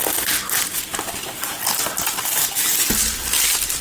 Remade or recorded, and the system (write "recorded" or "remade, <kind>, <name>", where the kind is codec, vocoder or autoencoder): recorded